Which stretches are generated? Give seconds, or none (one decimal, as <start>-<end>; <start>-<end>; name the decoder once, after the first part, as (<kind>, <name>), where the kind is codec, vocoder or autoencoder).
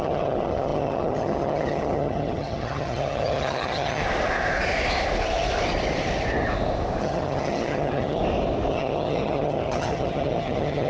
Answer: 0.0-4.0 (vocoder, HiFi-GAN); 7.0-8.2; 8.7-10.9